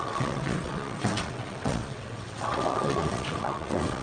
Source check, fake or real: fake